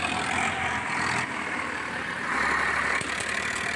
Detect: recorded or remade remade